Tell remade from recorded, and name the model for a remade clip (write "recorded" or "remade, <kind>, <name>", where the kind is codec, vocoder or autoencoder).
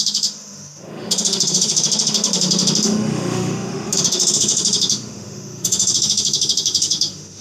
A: remade, autoencoder, DAC-VAE